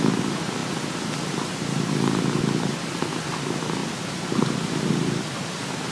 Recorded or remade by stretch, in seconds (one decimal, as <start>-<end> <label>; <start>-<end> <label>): 0.0-3.8 recorded; 3.8-5.4 remade; 5.4-5.9 recorded

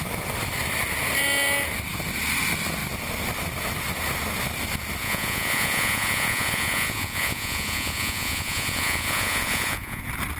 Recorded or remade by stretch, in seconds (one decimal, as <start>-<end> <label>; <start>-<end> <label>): 0.0-5.0 recorded; 5.0-10.0 remade; 10.0-10.4 recorded